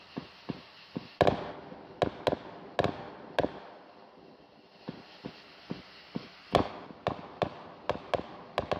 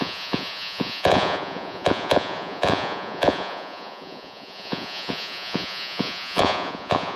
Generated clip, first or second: second